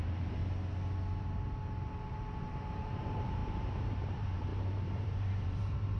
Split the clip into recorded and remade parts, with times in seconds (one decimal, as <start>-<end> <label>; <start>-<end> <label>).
0.0-0.4 remade; 0.4-2.4 recorded; 2.4-6.0 remade